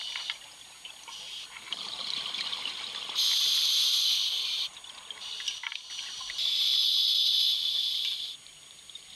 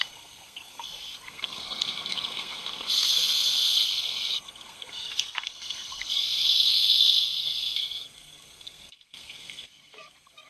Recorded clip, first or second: first